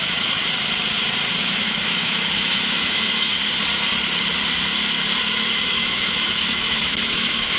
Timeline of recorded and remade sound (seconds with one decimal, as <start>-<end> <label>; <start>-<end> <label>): 0.0-0.4 remade; 0.4-1.4 recorded; 1.4-3.3 remade; 3.3-5.3 recorded; 5.3-7.6 remade